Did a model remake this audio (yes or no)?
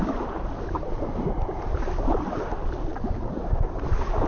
no